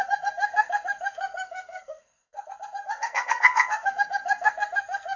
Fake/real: fake